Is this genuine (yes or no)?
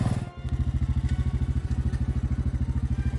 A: yes